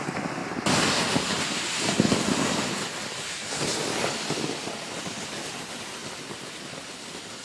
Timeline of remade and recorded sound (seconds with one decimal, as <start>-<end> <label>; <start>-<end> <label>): 0.0-7.4 recorded